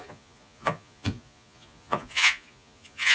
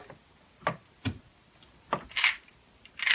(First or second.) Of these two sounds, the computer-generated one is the first